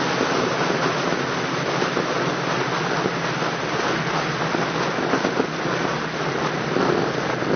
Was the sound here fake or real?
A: real